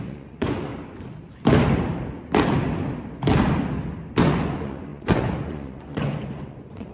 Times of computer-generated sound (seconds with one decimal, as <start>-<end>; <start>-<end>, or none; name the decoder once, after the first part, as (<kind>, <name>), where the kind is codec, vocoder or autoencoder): 0.0-0.7 (vocoder, Vocos); 4.2-6.9